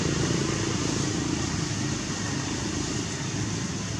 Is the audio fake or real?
real